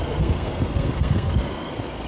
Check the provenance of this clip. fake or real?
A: fake